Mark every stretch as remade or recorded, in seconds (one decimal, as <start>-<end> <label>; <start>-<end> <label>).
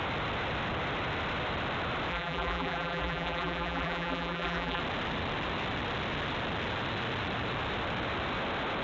0.0-2.1 recorded; 2.1-4.8 remade; 4.8-8.8 recorded